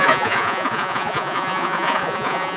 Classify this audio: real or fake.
fake